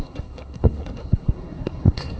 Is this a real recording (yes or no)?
no